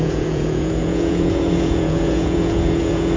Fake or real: fake